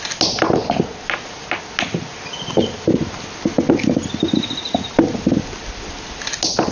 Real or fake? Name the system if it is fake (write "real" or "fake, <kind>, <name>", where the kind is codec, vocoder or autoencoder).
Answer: real